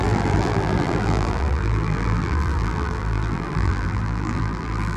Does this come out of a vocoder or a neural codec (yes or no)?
yes